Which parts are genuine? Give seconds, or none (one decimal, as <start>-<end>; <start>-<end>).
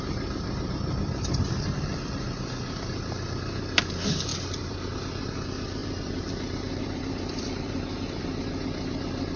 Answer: 0.0-4.3; 4.9-5.8; 8.2-9.4